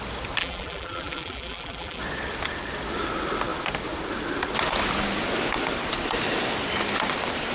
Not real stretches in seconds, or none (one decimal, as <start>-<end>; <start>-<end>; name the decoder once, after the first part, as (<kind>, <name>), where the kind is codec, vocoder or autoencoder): 0.4-2.0 (vocoder, BigVGAN v2)